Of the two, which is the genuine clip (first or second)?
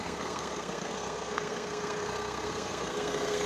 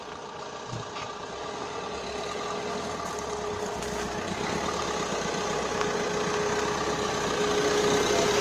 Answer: second